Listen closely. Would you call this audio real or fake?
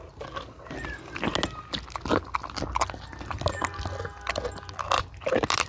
real